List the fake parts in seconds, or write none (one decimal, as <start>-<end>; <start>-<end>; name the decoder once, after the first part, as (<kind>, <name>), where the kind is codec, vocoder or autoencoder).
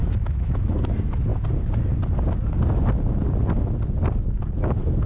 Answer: 0.0-0.9 (autoencoder, DAC-VAE)